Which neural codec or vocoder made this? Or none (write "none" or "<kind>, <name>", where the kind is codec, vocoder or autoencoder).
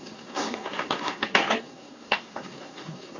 codec, SNAC